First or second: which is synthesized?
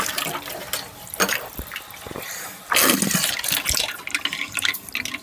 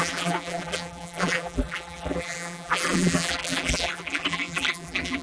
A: second